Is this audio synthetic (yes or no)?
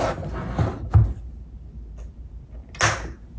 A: no